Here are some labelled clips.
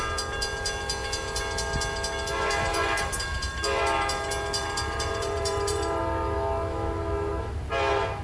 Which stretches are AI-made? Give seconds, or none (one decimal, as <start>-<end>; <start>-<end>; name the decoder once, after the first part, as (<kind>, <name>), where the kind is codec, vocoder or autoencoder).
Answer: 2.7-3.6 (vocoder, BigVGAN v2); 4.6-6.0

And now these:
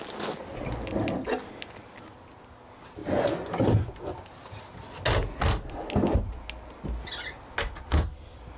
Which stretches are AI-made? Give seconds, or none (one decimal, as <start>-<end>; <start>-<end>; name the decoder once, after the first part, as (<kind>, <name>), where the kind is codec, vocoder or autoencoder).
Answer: none

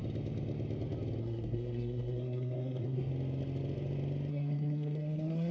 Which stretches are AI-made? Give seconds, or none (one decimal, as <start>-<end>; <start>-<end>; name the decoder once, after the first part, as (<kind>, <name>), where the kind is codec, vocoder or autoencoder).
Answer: 1.2-3.1 (codec, SNAC); 4.3-5.5

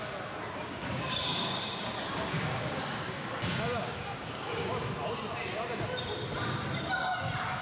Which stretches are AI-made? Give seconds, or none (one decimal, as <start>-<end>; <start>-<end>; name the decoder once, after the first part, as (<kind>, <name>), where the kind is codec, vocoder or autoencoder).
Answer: 0.6-4.8 (codec, DAC)

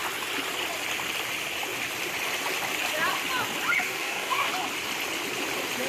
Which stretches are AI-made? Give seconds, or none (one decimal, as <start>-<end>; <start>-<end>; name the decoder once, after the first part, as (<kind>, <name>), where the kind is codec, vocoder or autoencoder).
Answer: 3.8-4.5 (codec, DAC)

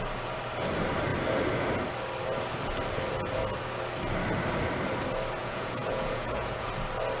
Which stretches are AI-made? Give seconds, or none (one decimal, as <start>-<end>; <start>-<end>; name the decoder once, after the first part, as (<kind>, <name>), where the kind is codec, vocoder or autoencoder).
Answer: 5.4-6.7 (vocoder, Vocos)

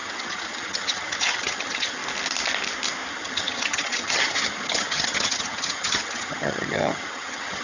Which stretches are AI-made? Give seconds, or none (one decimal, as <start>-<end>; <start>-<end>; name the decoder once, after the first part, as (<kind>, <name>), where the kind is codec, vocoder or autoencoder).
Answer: 0.0-2.0 (vocoder, HiFi-GAN); 3.1-7.6